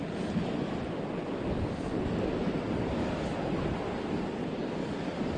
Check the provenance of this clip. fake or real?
real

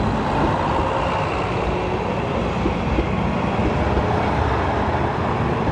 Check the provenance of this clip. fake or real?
real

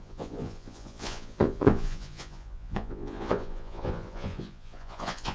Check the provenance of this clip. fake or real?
fake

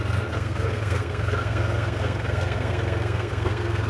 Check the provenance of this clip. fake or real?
fake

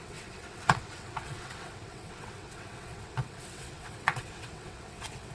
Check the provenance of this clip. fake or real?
fake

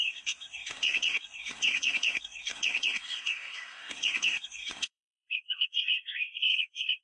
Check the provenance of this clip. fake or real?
fake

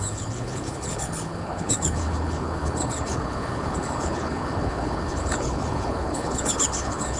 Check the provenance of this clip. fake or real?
fake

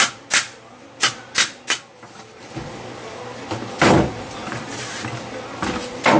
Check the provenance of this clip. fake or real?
real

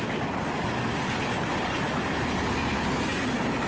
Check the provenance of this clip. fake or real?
real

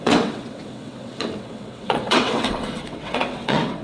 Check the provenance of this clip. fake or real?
fake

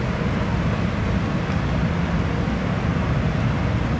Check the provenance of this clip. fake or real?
real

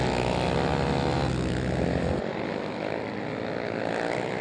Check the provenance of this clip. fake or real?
real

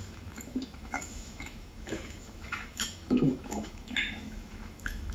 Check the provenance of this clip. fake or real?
fake